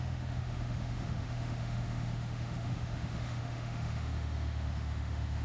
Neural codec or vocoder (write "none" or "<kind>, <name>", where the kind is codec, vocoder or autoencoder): autoencoder, DAC-VAE